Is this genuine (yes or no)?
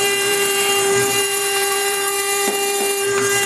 no